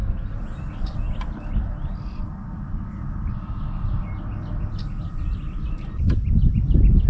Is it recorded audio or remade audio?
recorded